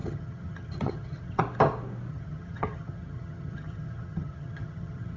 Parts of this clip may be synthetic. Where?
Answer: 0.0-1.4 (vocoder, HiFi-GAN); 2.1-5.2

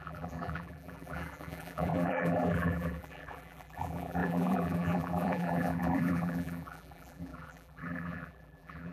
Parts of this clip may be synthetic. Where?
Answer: 0.0-8.9 (vocoder, BigVGAN v2)

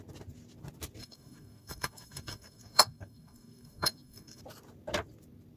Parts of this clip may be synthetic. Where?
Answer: 1.0-4.4 (codec, DAC)

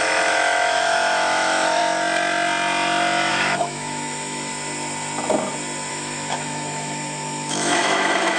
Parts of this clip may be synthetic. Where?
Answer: 0.0-1.8 (autoencoder, DAC-VAE); 3.3-4.5; 5.9-8.4